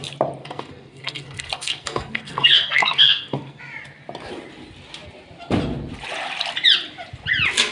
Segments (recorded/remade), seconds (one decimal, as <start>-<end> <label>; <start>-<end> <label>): 0.0-0.4 recorded; 0.4-3.6 remade; 3.6-7.7 recorded